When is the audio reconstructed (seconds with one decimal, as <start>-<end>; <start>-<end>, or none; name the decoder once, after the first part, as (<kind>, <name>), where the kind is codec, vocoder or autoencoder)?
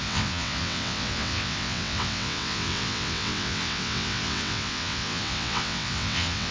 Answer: 0.0-6.5 (vocoder, WaveNeXt)